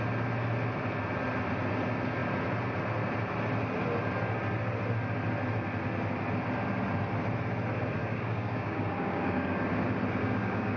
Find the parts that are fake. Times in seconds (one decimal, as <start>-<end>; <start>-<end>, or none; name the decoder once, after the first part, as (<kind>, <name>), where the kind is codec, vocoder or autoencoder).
8.0-9.6 (codec, DAC); 10.2-10.8